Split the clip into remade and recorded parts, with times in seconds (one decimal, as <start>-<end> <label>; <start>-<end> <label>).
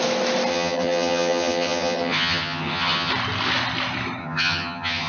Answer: 0.0-0.5 recorded; 0.5-3.1 remade; 3.1-4.2 recorded; 4.2-5.1 remade